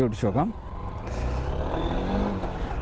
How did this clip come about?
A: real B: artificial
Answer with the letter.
A